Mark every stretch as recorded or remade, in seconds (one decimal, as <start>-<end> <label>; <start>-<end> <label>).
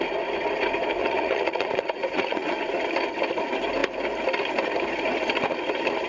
0.0-1.0 recorded; 1.0-2.6 remade; 2.6-6.1 recorded